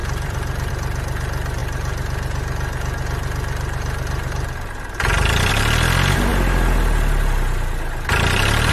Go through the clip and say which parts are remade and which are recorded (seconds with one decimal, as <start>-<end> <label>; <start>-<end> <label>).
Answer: 0.0-0.7 remade; 0.7-8.7 recorded